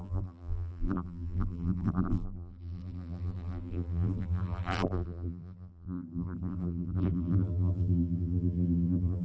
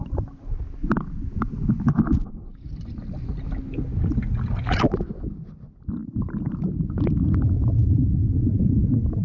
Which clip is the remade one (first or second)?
first